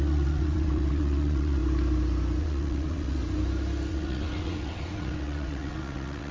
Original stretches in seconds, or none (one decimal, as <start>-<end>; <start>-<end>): 1.6-2.4; 3.2-3.9